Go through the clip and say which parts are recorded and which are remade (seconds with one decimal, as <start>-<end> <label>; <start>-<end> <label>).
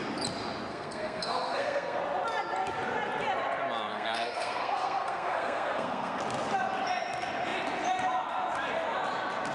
0.0-0.7 recorded; 0.7-2.0 remade; 2.0-3.9 recorded; 3.9-6.2 remade; 6.2-9.5 recorded